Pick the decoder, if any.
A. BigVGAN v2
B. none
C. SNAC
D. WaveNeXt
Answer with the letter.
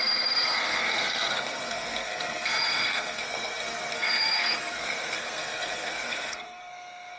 C